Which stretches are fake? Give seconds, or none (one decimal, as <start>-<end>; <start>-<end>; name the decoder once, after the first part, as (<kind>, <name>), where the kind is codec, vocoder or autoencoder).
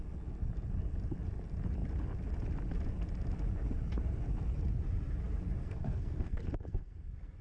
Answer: 5.6-7.4 (codec, SNAC)